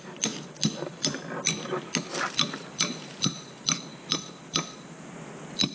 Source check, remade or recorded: recorded